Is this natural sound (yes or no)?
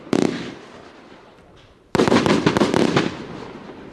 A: yes